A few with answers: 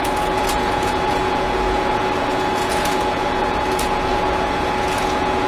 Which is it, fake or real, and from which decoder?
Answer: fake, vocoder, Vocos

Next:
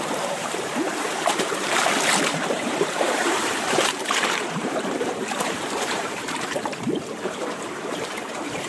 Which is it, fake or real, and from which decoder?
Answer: fake, vocoder, BigVGAN v2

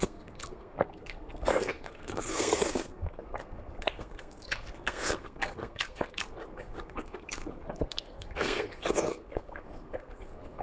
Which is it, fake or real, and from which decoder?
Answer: fake, codec, SNAC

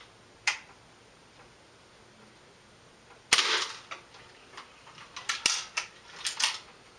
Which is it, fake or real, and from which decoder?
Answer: real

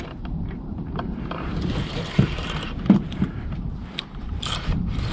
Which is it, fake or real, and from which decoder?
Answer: fake, vocoder, BigVGAN v2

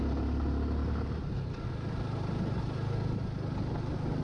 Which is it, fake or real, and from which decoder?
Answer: real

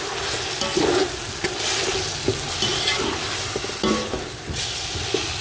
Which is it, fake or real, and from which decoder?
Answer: real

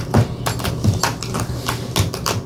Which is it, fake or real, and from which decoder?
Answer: real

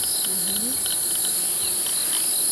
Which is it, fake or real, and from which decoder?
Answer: real